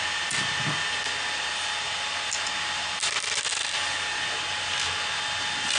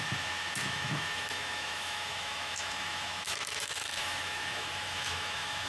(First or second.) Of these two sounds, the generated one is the second